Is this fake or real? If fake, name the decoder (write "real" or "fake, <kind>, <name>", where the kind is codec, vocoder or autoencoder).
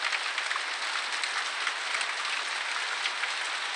real